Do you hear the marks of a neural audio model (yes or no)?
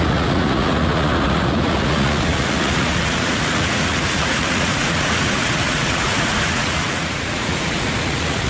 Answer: yes